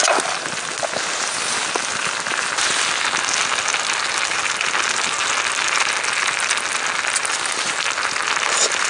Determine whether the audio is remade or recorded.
recorded